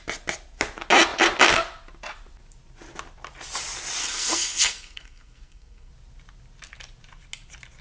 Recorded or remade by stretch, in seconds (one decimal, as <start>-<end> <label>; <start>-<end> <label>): 0.0-4.0 recorded; 4.0-5.9 remade; 5.9-7.8 recorded